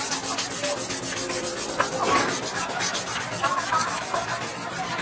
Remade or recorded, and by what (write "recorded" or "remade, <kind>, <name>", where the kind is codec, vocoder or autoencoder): recorded